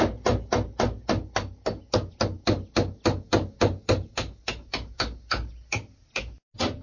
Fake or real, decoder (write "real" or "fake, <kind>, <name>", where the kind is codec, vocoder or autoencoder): real